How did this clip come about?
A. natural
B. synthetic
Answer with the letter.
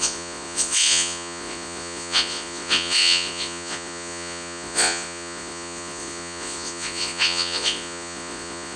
B